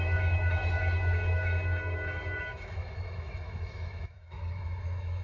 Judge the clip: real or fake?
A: fake